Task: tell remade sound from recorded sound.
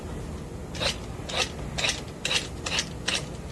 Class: recorded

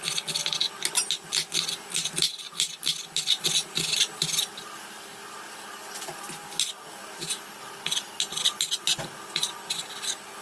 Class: recorded